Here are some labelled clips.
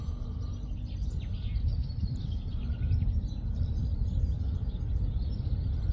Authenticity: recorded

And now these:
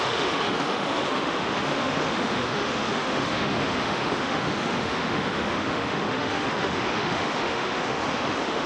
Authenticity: remade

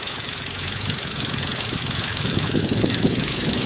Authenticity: remade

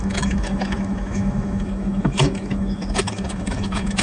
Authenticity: remade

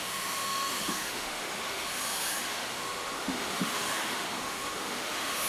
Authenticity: remade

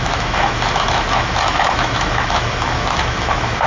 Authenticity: remade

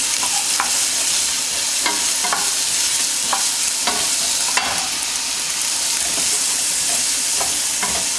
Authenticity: recorded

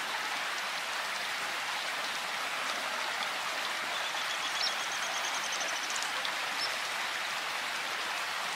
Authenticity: recorded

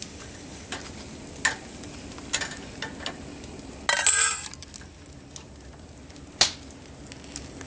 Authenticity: recorded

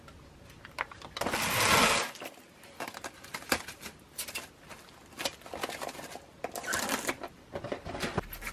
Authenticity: recorded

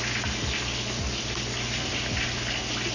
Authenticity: recorded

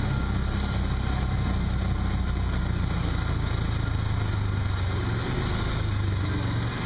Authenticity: recorded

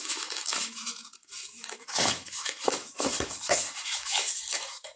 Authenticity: remade